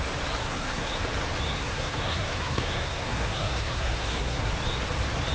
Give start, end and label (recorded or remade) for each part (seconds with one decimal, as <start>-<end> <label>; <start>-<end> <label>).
0.0-0.4 recorded; 0.4-0.9 remade; 0.9-1.5 recorded; 1.5-4.5 remade; 4.5-5.3 recorded